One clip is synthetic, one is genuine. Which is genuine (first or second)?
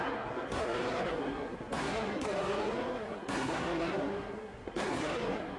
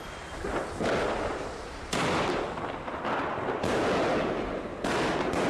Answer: second